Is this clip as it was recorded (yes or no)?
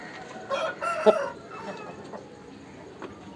yes